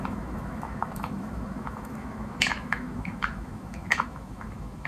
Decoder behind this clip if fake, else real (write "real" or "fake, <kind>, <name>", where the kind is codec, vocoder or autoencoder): fake, autoencoder, DAC-VAE